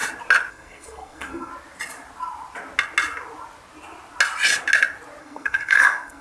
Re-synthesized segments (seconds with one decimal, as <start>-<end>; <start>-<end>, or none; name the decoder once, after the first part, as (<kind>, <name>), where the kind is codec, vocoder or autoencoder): 0.5-1.5 (codec, SNAC); 5.2-6.2